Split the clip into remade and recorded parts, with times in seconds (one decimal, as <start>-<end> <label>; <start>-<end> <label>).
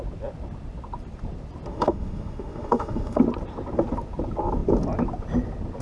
0.0-1.7 recorded; 1.7-3.2 remade; 3.2-5.8 recorded